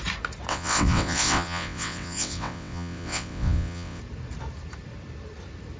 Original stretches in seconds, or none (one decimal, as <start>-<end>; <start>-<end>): 0.0-0.5; 4.0-5.8